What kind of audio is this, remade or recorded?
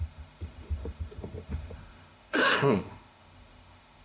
remade